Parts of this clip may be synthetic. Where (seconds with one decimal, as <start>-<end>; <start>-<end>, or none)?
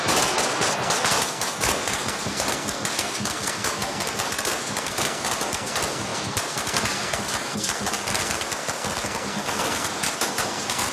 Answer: 0.0-10.9